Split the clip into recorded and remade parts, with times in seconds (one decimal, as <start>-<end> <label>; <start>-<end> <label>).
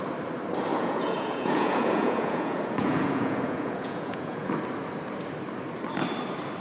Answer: 0.0-0.7 recorded; 0.7-4.5 remade; 4.5-6.6 recorded